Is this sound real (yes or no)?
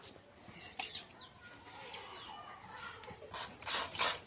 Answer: yes